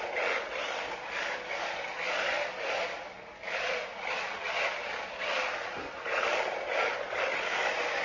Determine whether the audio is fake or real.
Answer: real